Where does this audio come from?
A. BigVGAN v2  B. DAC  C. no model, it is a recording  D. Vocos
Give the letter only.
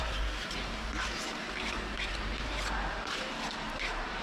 A